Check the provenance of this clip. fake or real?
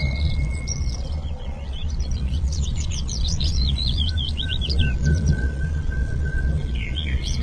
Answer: fake